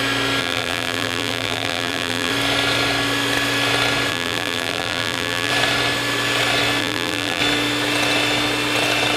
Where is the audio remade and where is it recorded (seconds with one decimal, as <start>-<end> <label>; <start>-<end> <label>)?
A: 0.0-0.4 recorded; 0.4-2.3 remade; 2.3-4.1 recorded; 4.1-5.5 remade; 5.5-6.8 recorded; 6.8-7.4 remade; 7.4-9.2 recorded